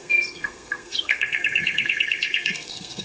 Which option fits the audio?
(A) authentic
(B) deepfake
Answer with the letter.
B